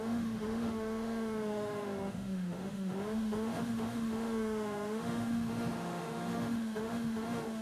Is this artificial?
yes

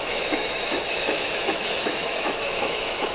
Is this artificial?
yes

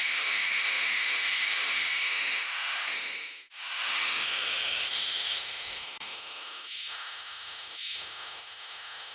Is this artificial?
yes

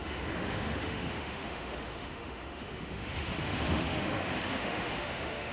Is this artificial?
yes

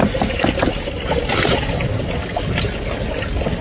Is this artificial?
no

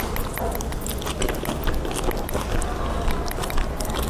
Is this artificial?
no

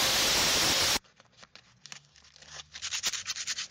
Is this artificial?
no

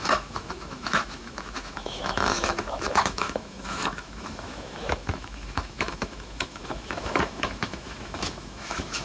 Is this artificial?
yes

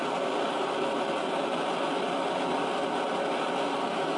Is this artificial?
no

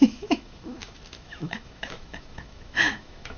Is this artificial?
yes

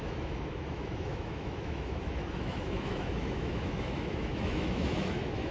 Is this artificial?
yes